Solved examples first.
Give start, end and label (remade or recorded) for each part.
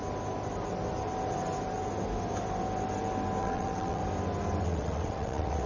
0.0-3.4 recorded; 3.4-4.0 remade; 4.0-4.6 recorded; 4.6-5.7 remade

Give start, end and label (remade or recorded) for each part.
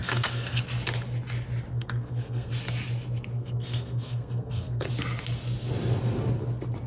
0.0-0.6 remade; 0.6-1.7 recorded; 1.7-2.5 remade; 2.5-3.3 recorded; 3.3-4.9 remade; 4.9-6.9 recorded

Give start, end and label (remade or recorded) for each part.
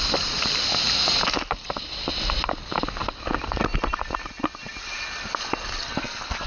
0.0-6.5 recorded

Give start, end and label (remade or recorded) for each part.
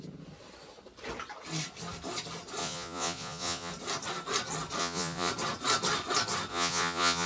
0.0-2.6 recorded; 2.6-3.7 remade; 3.7-4.8 recorded; 4.8-5.3 remade; 5.3-6.5 recorded; 6.5-7.3 remade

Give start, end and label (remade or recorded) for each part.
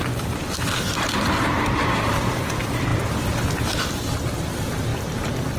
0.0-2.9 remade; 2.9-3.8 recorded; 3.8-4.9 remade; 4.9-5.6 recorded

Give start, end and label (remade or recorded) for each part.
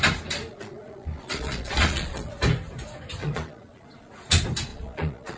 0.0-0.5 recorded; 0.5-2.3 remade; 2.3-3.2 recorded; 3.2-4.1 remade; 4.1-4.7 recorded; 4.7-5.4 remade